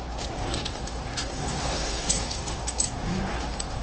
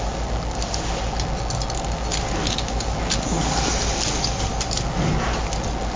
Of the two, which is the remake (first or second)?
first